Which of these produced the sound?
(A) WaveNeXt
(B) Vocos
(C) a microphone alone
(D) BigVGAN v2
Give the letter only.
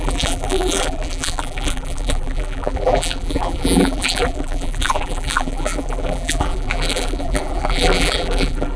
D